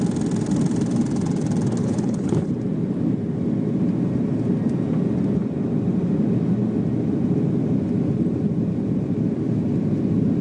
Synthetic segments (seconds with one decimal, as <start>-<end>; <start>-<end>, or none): 1.8-2.5